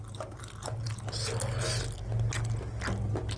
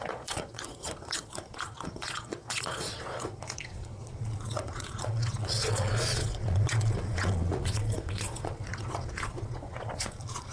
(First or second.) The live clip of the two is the first